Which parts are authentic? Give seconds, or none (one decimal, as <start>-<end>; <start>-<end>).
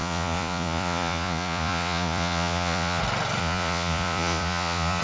3.0-3.4